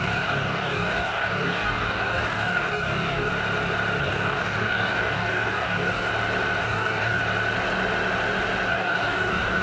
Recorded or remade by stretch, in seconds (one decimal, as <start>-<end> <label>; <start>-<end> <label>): 0.0-3.3 remade; 3.3-4.0 recorded; 4.0-6.1 remade; 6.1-6.6 recorded; 6.6-7.2 remade; 7.2-8.7 recorded; 8.7-9.6 remade